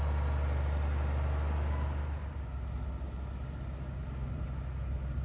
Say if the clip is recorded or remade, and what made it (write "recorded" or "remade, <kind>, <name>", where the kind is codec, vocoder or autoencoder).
recorded